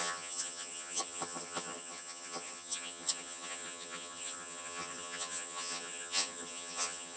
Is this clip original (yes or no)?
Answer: no